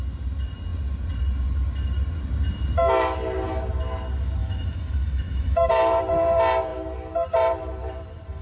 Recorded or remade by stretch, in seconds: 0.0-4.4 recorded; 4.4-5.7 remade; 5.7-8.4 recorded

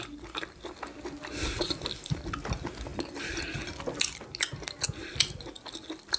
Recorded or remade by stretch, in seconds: 0.0-6.2 recorded

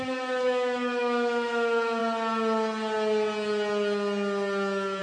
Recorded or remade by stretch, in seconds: 0.0-2.0 remade; 2.0-5.0 recorded